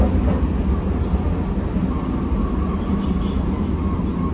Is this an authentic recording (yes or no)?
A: yes